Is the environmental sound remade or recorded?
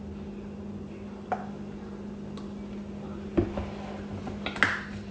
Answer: recorded